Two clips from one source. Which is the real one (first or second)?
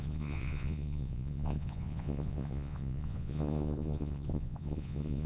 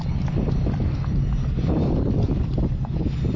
second